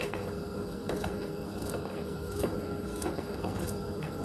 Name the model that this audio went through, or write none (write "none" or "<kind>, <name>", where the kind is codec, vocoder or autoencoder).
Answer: codec, SNAC